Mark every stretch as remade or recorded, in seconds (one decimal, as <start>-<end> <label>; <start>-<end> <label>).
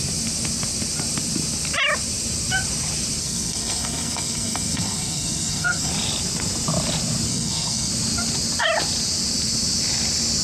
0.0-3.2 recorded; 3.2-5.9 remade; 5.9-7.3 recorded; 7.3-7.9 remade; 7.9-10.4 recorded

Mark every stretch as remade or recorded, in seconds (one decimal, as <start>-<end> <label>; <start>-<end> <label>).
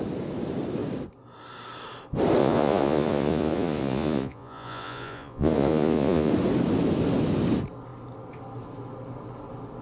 0.0-2.4 recorded; 2.4-6.3 remade; 6.3-9.8 recorded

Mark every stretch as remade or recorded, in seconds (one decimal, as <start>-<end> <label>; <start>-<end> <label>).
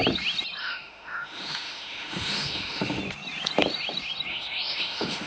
0.0-0.6 recorded; 0.6-3.0 remade; 3.0-4.3 recorded; 4.3-5.3 remade